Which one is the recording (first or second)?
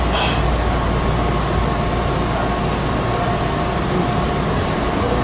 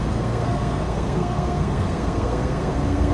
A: first